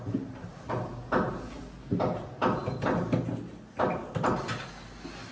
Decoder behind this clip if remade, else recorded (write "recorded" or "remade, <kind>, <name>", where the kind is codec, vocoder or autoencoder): recorded